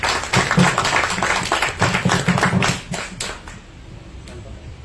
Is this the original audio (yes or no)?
yes